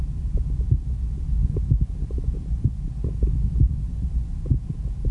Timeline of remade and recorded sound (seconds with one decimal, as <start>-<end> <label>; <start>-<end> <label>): 0.0-5.1 recorded